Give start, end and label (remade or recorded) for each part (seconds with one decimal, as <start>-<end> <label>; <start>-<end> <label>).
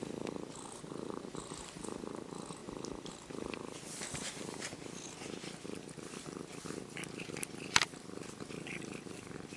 0.0-9.6 recorded